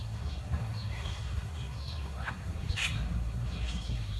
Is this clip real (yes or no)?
no